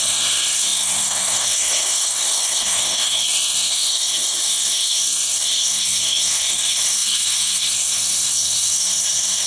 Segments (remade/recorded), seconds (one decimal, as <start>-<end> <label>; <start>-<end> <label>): 0.0-9.5 remade